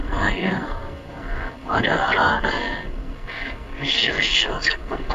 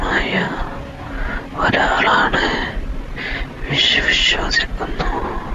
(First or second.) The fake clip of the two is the first